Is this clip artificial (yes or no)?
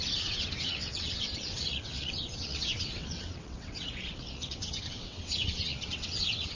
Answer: yes